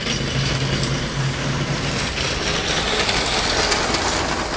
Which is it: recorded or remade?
recorded